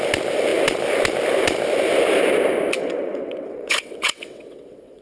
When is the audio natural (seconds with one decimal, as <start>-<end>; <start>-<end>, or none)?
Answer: 0.0-2.8